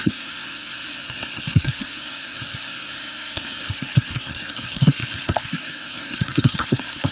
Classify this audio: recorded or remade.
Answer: remade